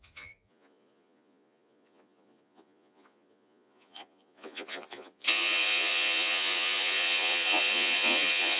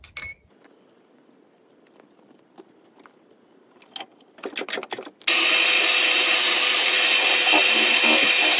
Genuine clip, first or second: second